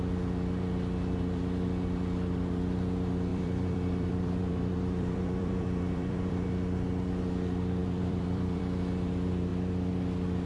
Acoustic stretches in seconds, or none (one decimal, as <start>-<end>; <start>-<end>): 0.0-3.3; 6.5-7.8; 8.6-10.5

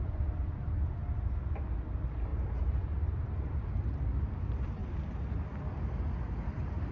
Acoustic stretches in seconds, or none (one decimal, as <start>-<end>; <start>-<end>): 1.0-1.6; 2.3-3.9; 4.8-5.3